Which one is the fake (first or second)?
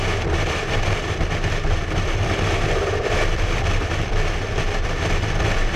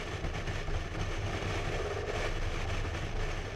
first